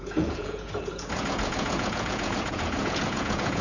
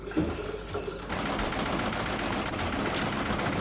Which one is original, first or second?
second